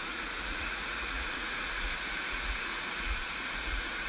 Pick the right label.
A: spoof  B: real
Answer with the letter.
A